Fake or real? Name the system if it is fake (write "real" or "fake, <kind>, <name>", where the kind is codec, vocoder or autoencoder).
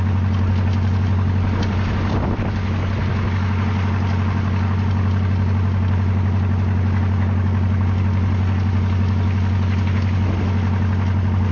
real